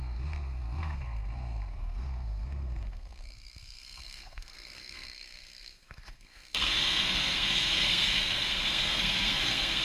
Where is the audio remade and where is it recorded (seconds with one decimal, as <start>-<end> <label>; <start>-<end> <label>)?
0.0-9.8 remade